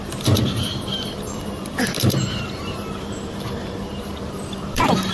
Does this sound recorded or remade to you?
remade